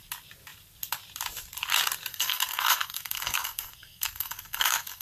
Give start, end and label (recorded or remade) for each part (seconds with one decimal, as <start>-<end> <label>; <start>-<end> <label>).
0.0-2.1 recorded; 2.1-5.0 remade